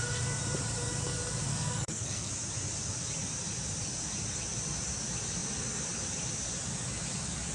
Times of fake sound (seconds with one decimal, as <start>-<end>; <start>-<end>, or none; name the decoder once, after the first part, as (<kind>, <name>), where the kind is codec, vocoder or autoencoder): 1.5-2.3 (codec, SNAC)